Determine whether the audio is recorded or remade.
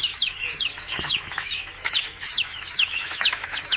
remade